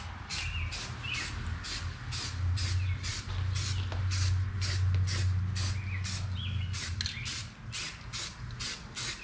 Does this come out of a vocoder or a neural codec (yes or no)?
no